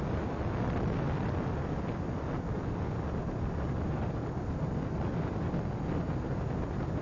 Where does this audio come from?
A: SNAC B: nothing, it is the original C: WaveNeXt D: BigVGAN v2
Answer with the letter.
B